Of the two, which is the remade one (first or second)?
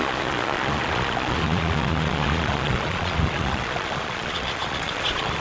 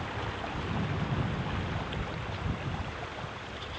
first